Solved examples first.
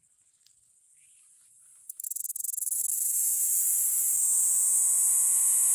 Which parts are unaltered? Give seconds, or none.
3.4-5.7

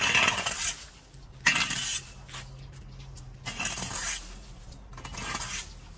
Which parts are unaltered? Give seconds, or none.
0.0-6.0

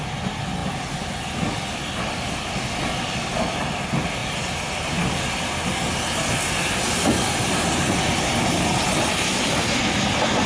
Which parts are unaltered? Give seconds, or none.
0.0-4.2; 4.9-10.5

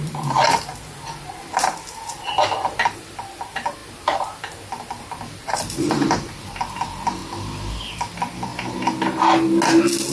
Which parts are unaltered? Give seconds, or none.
3.8-5.0; 7.2-7.8; 8.5-10.1

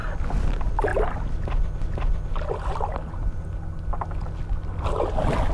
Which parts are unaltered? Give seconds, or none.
0.0-5.5

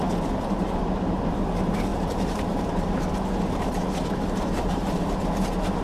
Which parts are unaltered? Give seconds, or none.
0.0-1.9; 5.1-5.8